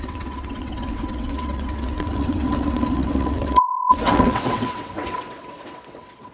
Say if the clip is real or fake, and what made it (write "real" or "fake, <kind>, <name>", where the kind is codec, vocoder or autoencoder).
fake, vocoder, WaveNeXt